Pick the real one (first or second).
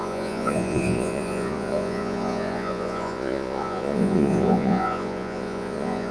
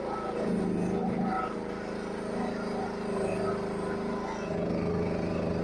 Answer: second